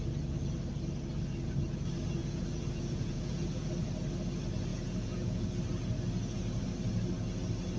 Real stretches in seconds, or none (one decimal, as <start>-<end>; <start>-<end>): 0.0-2.2; 3.7-4.7; 5.5-7.8